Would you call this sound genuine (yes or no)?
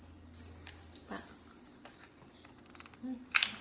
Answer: yes